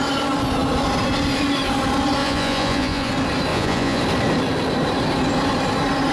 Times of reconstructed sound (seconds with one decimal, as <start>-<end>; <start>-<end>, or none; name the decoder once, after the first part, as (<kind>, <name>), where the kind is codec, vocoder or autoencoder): 2.2-3.1 (vocoder, Vocos); 3.5-4.0